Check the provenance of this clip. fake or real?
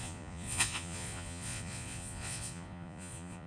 fake